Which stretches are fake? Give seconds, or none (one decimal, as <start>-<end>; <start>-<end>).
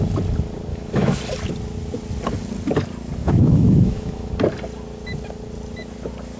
0.7-1.2; 3.2-4.3